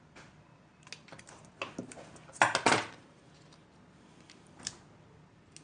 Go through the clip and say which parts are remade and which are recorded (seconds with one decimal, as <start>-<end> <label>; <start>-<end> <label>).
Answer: 0.0-5.6 recorded